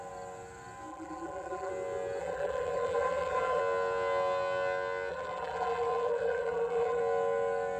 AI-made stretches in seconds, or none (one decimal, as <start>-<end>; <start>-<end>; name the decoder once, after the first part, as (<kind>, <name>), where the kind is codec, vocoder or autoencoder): 0.9-1.7 (vocoder, BigVGAN v2); 2.2-3.6; 5.1-7.0